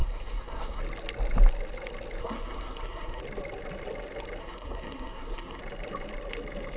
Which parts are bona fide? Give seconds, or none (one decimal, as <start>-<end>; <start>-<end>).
0.8-2.2; 3.2-4.4; 5.6-6.8